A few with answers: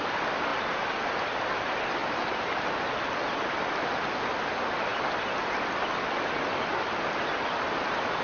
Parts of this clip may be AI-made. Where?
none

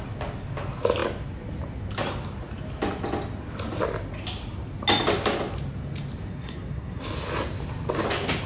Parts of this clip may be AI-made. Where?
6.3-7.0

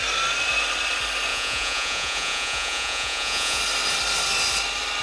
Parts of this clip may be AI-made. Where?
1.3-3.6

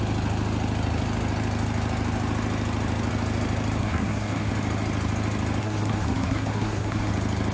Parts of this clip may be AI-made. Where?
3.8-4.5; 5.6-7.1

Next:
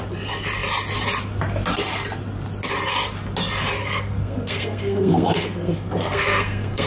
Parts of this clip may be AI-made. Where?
3.8-6.9

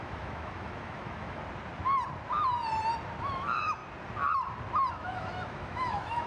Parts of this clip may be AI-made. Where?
0.0-1.4; 3.2-3.8; 4.9-6.3